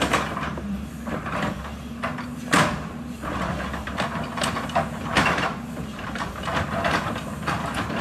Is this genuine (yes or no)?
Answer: no